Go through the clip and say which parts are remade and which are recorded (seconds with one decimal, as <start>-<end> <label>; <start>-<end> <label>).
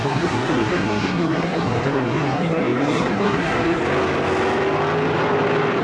0.0-3.8 remade; 3.8-5.8 recorded